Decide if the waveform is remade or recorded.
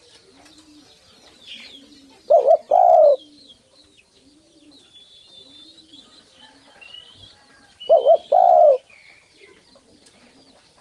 remade